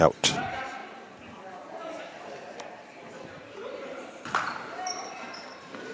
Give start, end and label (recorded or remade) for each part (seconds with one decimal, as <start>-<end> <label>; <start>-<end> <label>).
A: 0.0-0.8 remade; 0.8-2.0 recorded; 2.0-5.9 remade

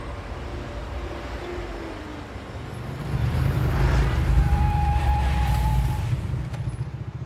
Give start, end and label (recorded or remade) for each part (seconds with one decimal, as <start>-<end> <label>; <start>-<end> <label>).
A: 0.0-0.8 recorded; 0.8-1.4 remade; 1.4-7.3 recorded

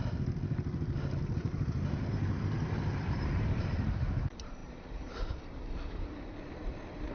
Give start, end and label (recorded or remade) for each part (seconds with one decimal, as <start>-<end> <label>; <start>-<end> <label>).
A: 0.0-2.1 recorded; 2.1-7.1 remade

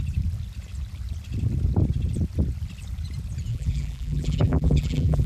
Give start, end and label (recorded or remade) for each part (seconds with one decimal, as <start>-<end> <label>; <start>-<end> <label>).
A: 0.0-3.5 recorded; 3.5-5.3 remade

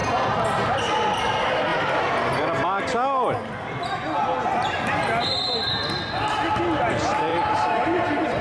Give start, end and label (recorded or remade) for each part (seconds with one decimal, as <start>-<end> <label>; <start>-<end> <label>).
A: 0.0-7.3 recorded; 7.3-8.4 remade